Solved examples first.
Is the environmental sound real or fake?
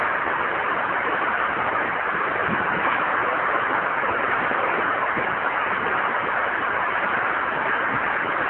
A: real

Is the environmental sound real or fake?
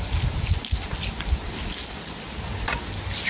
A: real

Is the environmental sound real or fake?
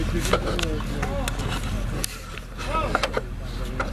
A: real